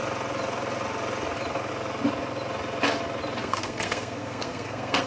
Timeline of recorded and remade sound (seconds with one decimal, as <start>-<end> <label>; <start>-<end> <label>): 0.0-3.4 recorded; 3.4-5.1 remade